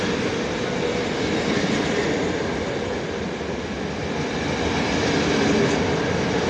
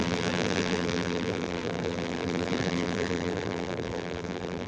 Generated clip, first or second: second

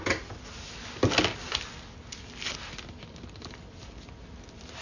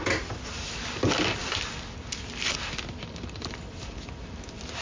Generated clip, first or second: second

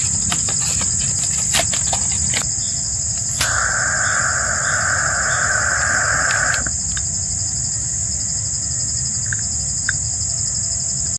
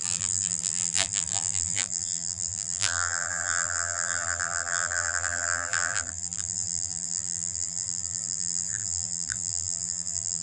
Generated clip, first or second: second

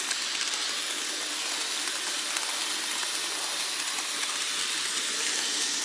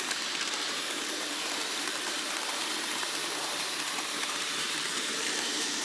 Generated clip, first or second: second